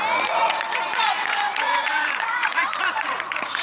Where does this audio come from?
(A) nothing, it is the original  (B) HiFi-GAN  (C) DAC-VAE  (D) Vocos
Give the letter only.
D